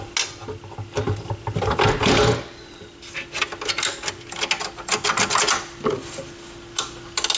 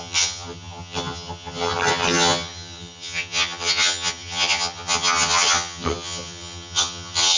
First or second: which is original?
first